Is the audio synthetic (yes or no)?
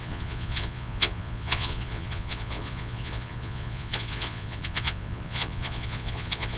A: yes